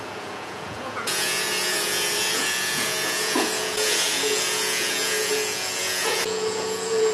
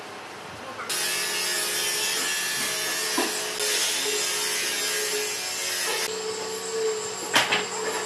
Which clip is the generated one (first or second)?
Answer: first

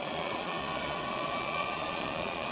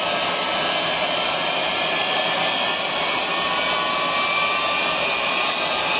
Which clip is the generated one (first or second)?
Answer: first